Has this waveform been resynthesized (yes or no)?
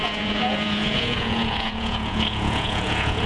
yes